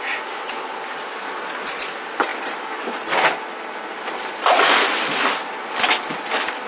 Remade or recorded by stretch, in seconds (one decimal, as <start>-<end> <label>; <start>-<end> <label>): 0.0-6.7 recorded